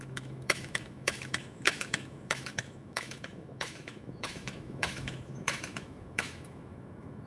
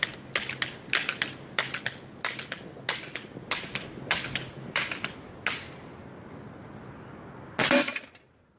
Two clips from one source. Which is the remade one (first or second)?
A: first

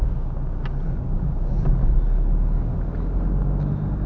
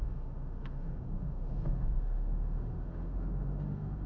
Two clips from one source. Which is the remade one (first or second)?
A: second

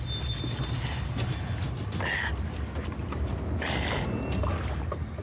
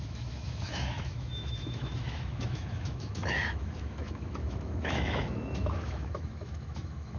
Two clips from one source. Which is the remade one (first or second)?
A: second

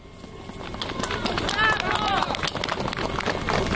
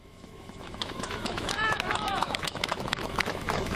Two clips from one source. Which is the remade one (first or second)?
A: second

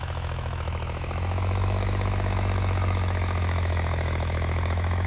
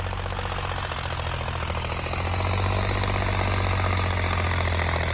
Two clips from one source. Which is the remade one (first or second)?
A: first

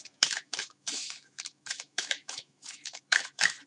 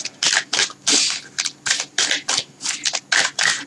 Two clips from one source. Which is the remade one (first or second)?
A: first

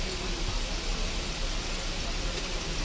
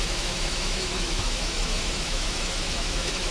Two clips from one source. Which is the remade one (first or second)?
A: second